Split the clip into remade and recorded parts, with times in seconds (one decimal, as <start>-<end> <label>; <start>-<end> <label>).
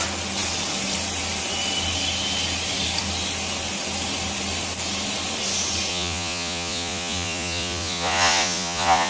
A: 0.0-5.9 recorded; 5.9-9.1 remade